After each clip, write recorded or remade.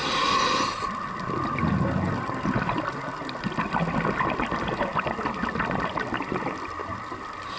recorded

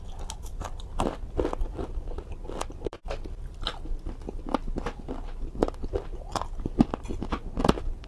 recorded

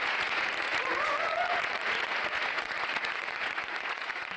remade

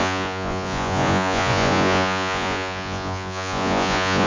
remade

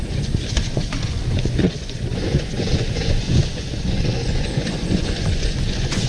remade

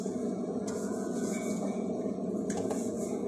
remade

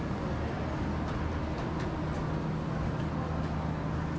recorded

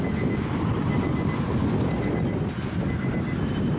recorded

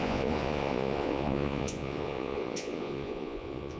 remade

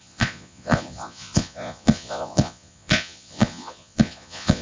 remade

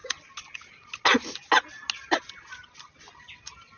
recorded